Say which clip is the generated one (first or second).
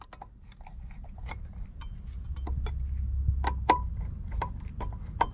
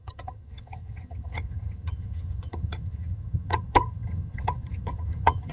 second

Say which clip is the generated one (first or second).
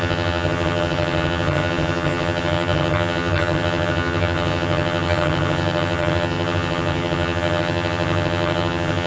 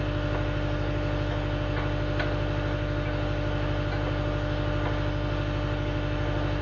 first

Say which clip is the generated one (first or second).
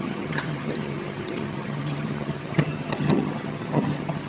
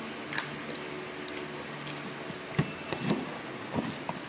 first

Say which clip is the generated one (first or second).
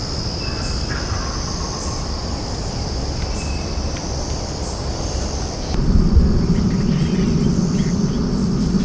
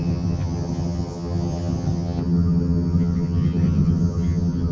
second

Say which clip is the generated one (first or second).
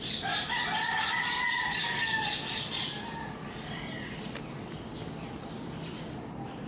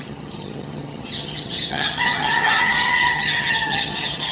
second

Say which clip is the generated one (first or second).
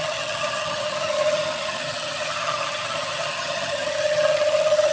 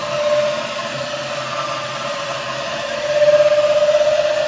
first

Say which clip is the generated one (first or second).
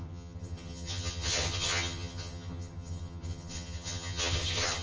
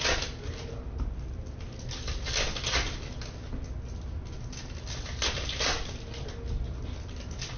first